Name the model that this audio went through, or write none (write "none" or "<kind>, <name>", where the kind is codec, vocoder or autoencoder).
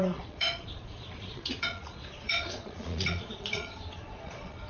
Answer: vocoder, Vocos